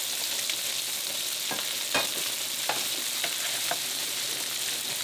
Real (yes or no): yes